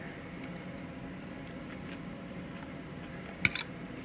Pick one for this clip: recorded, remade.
recorded